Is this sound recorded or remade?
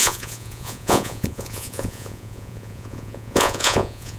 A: remade